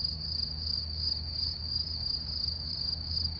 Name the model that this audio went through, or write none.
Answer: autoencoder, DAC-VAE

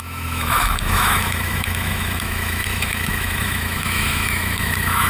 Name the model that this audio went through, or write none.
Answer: autoencoder, DAC-VAE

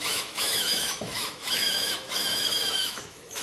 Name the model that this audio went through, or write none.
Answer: autoencoder, DAC-VAE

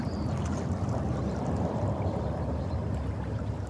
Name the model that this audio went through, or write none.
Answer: none